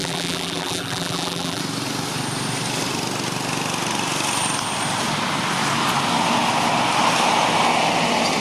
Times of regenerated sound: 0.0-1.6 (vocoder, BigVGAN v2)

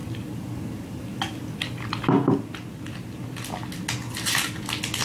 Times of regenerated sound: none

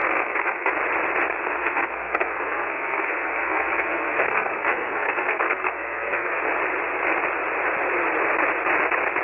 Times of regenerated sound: 0.0-0.7 (codec, SNAC); 1.4-6.4

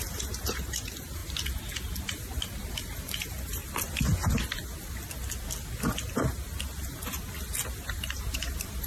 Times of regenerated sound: 0.0-1.2 (vocoder, BigVGAN v2); 2.0-3.6; 7.9-8.9

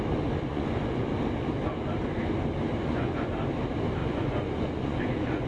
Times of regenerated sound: 0.5-1.1 (vocoder, Vocos); 2.8-3.3; 4.0-5.5